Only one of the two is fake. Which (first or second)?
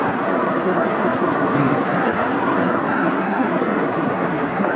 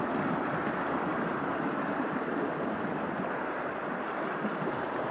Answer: first